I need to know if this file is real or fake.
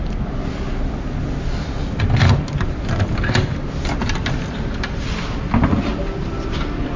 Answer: real